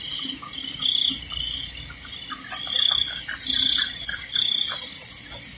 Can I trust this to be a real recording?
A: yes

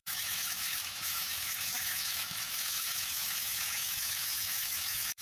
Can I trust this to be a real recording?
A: no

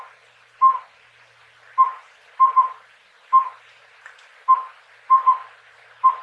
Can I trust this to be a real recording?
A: yes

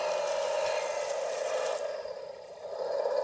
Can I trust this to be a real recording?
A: yes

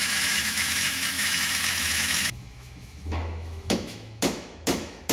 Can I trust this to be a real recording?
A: no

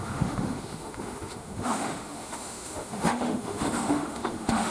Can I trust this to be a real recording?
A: no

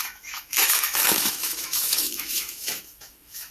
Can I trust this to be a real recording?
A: no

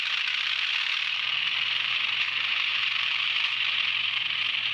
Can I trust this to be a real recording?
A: yes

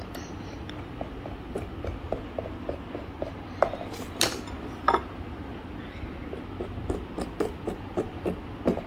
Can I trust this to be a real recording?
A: yes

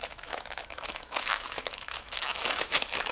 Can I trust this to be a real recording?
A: no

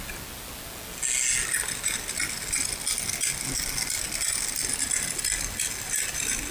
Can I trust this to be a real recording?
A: yes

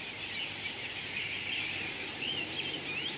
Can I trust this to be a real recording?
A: yes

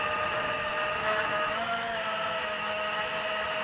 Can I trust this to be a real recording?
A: no